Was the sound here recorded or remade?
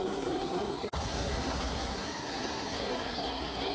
remade